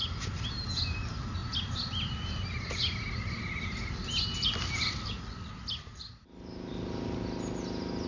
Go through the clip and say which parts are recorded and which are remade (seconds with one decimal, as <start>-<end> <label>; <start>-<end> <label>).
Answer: 0.0-8.1 recorded